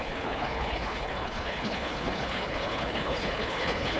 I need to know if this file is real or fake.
fake